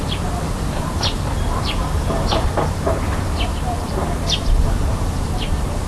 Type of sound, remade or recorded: remade